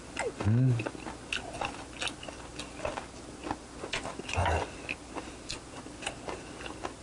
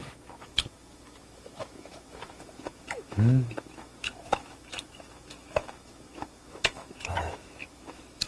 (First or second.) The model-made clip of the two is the second